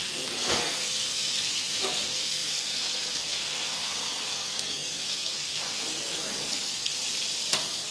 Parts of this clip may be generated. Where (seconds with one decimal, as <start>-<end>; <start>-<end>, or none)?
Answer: 0.0-6.9; 7.5-7.9